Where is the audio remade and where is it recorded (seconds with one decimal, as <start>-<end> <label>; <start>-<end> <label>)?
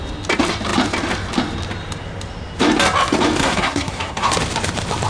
0.0-3.4 recorded; 3.4-4.3 remade; 4.3-5.1 recorded